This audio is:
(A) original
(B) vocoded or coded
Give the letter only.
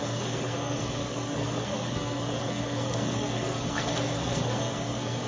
B